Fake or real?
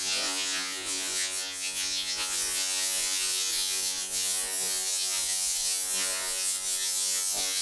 fake